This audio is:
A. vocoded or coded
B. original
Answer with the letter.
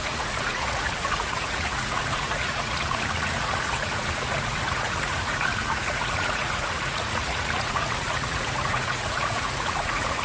A